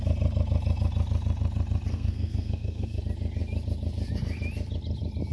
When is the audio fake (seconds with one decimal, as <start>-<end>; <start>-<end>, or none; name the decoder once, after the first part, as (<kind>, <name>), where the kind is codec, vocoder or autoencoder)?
1.9-3.0 (codec, SNAC)